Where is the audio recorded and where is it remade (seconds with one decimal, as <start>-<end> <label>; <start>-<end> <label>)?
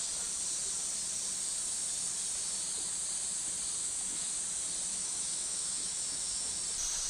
0.0-3.8 recorded; 3.8-4.4 remade; 4.4-4.9 recorded; 4.9-6.6 remade; 6.6-7.1 recorded